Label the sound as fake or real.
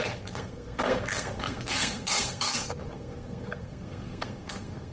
fake